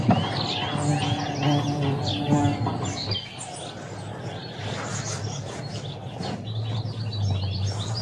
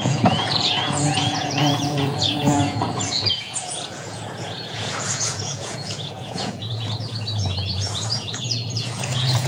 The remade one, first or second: second